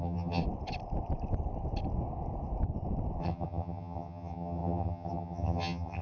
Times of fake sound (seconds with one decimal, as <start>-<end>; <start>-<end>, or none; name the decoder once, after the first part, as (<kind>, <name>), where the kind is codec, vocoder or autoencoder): 0.0-0.4 (vocoder, HiFi-GAN); 3.2-6.0